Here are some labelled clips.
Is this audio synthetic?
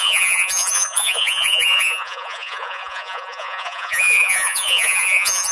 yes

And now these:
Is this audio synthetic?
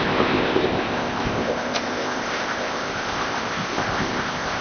yes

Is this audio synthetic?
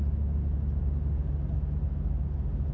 no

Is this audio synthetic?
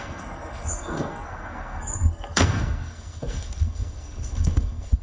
yes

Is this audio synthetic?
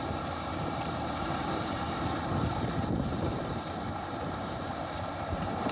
yes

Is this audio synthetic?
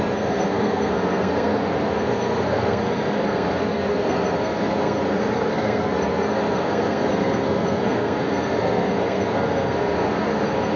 yes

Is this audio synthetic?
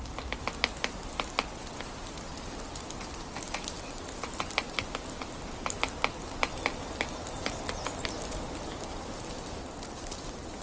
no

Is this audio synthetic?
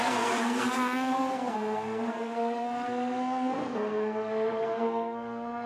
yes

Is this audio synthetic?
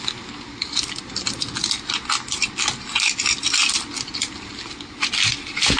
no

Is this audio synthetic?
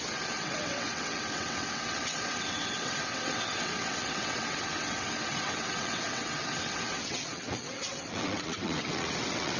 yes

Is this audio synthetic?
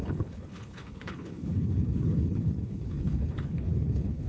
yes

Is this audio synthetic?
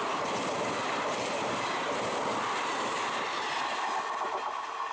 no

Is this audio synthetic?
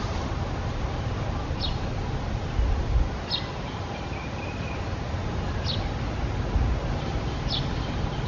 no